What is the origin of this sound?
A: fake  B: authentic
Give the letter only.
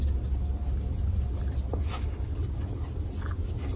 B